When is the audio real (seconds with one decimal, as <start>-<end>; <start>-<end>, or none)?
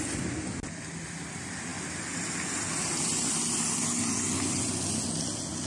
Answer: 0.0-5.7